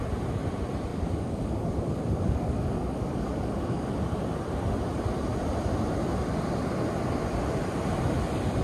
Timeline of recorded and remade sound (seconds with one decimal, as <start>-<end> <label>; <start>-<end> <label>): 0.0-0.9 recorded; 0.9-3.9 remade; 3.9-8.6 recorded